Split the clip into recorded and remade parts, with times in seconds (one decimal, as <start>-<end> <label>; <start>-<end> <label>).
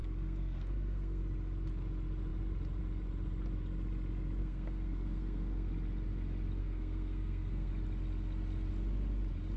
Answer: 0.0-1.2 remade; 1.2-4.4 recorded; 4.4-5.7 remade; 5.7-6.6 recorded; 6.6-7.7 remade; 7.7-9.6 recorded